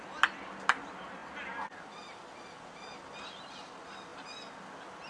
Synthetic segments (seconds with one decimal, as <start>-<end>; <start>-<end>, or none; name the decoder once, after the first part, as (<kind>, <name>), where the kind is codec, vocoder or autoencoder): none